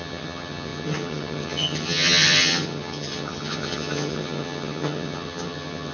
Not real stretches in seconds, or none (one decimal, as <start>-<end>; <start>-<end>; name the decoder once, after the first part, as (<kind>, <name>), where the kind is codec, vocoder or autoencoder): 0.0-5.9 (vocoder, HiFi-GAN)